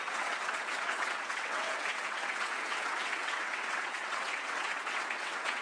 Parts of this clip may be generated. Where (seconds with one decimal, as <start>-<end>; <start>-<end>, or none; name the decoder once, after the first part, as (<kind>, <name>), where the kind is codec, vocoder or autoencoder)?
0.0-5.6 (vocoder, WaveNeXt)